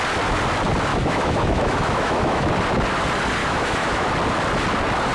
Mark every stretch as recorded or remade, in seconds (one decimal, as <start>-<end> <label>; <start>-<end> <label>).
0.0-0.9 recorded; 0.9-2.5 remade; 2.5-3.4 recorded; 3.4-4.1 remade; 4.1-5.1 recorded